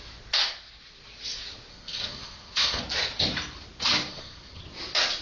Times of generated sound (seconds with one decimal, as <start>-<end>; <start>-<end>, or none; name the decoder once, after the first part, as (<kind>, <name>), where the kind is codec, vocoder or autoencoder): 1.7-2.8 (codec, SNAC); 4.1-4.6